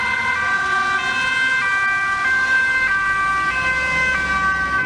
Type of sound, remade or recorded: recorded